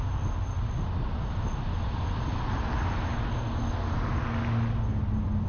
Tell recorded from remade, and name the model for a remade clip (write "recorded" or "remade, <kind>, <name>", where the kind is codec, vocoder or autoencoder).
recorded